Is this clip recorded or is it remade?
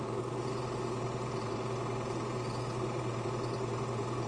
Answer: remade